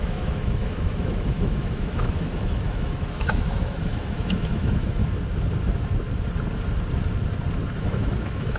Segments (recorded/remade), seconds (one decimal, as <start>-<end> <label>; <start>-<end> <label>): 0.0-5.0 remade; 5.0-7.7 recorded; 7.7-8.6 remade